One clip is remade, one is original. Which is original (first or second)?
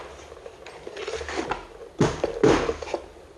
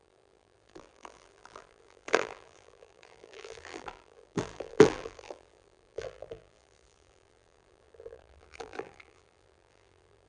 first